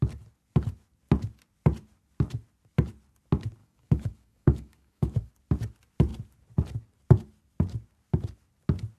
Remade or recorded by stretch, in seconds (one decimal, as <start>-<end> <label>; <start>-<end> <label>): 0.0-3.6 recorded; 3.6-5.3 remade; 5.3-9.0 recorded